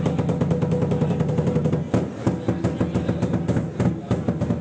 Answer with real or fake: real